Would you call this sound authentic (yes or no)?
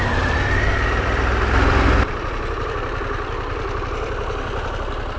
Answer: no